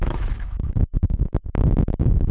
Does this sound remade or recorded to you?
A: remade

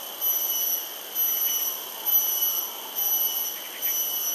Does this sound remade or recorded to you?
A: recorded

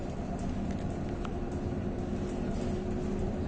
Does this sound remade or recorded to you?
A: recorded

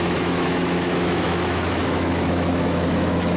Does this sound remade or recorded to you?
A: remade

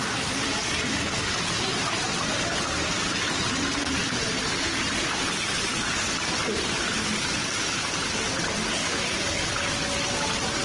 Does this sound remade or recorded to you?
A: recorded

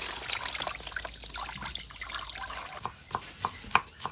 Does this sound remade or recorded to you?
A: recorded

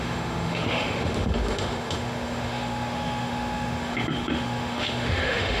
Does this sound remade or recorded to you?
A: remade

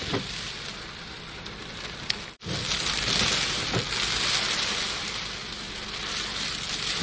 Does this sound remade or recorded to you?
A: recorded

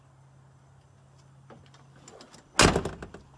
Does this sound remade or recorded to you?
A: recorded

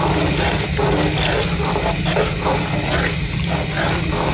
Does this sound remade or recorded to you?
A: recorded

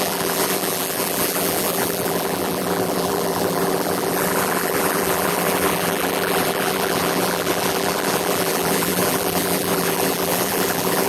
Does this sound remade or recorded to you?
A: remade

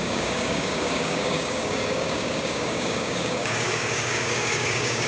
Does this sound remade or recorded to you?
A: remade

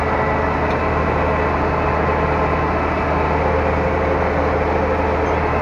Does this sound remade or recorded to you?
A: recorded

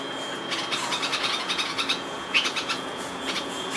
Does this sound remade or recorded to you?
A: remade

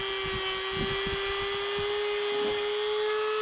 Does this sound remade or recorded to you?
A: recorded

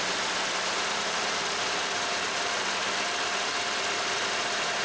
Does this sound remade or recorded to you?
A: recorded